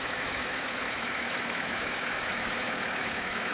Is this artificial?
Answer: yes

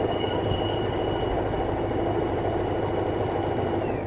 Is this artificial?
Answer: no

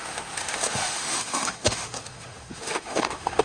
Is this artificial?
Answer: yes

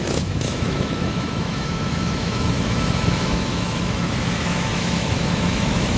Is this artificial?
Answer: yes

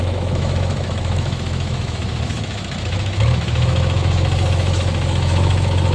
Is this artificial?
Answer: yes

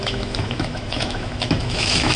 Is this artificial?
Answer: yes